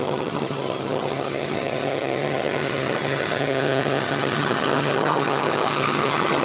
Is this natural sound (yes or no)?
no